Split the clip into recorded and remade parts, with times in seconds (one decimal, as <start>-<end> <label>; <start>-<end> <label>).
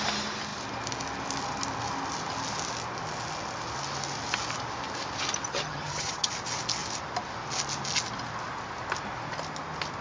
0.0-5.5 recorded; 5.5-6.3 remade; 6.3-10.0 recorded